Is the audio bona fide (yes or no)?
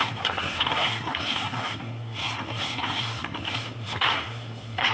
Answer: no